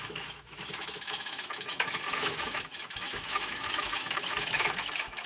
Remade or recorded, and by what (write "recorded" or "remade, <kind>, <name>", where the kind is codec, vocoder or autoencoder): remade, autoencoder, DAC-VAE